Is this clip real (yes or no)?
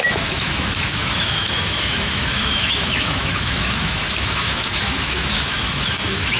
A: no